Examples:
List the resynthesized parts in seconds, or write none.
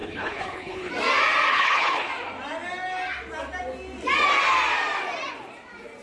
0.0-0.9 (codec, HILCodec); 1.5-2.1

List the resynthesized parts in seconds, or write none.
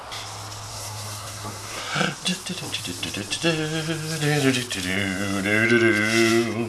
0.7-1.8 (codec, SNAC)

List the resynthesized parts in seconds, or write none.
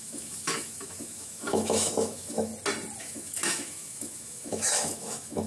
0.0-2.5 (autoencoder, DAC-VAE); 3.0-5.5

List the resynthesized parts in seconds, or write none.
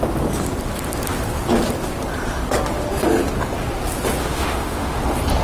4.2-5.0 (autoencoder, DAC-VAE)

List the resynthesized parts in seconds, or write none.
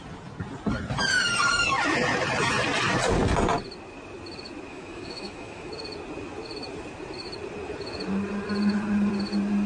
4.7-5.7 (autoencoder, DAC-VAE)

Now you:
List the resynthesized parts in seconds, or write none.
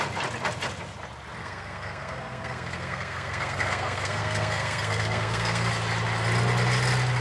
1.4-5.7 (codec, SNAC)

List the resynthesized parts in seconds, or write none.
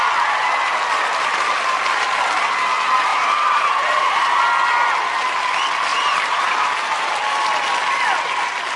3.1-4.4 (vocoder, BigVGAN v2); 5.9-7.1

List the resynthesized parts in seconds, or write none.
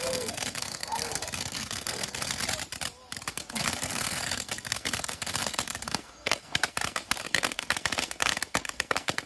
0.0-2.4 (codec, SNAC); 3.3-9.3